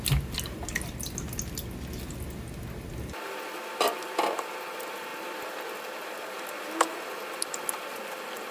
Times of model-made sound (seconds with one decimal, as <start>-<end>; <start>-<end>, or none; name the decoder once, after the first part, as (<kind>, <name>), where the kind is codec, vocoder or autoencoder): none